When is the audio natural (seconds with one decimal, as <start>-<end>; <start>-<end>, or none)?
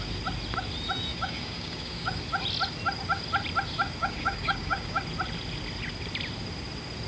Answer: 0.0-1.1; 2.2-4.0; 5.0-7.1